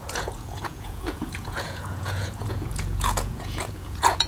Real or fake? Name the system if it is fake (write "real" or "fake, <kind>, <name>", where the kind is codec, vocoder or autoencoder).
fake, vocoder, Vocos